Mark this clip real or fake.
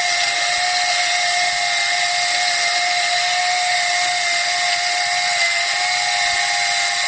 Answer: real